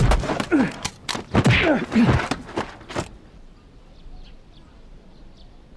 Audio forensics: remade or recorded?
recorded